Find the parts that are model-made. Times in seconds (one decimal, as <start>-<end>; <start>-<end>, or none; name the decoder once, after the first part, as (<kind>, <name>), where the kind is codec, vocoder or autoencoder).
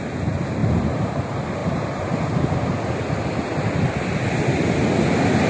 none